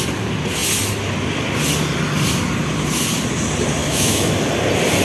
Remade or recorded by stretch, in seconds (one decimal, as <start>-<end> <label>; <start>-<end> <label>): 0.0-3.8 recorded; 3.8-4.3 remade; 4.3-5.0 recorded

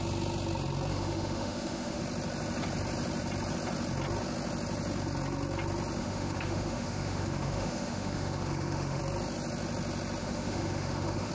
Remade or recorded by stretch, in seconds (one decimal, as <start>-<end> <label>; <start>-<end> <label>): 0.0-0.9 recorded; 0.9-2.0 remade; 2.0-6.0 recorded; 6.0-9.0 remade; 9.0-10.2 recorded; 10.2-11.3 remade

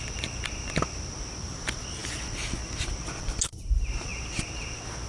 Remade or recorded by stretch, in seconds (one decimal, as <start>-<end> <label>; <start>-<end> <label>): 0.0-5.1 recorded

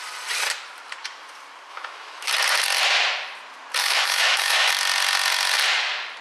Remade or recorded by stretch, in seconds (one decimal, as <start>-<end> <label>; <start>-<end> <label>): 0.0-1.7 recorded; 1.7-2.3 remade; 2.3-3.8 recorded; 3.8-4.7 remade; 4.7-6.2 recorded